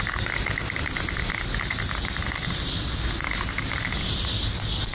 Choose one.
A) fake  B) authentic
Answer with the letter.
B